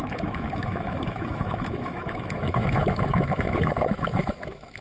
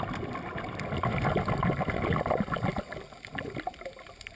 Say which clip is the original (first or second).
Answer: second